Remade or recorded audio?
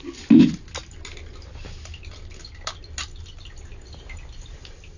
recorded